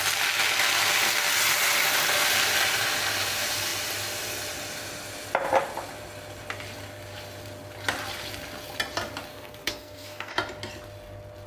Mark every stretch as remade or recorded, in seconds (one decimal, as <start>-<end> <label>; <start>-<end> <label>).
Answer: 0.0-9.3 recorded; 9.3-10.3 remade; 10.3-11.5 recorded

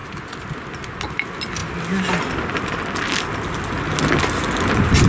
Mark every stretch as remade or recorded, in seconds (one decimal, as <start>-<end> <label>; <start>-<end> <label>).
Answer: 0.0-5.1 recorded

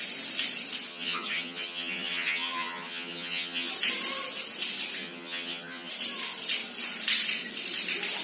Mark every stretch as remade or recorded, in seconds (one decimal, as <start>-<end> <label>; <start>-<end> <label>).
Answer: 0.0-0.9 recorded; 0.9-3.7 remade; 3.7-5.0 recorded; 5.0-5.9 remade; 5.9-8.2 recorded

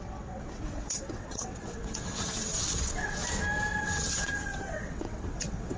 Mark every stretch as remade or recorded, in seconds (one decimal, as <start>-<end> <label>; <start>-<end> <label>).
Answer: 0.0-3.2 remade; 3.2-3.8 recorded; 3.8-5.8 remade

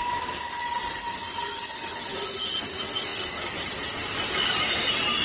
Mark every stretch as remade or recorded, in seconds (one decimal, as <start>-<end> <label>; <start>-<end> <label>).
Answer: 0.0-3.1 recorded; 3.1-3.7 remade; 3.7-5.2 recorded

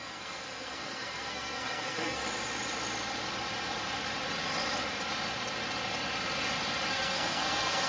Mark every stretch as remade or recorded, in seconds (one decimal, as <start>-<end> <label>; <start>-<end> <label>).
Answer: 0.0-2.2 remade; 2.2-6.9 recorded; 6.9-7.9 remade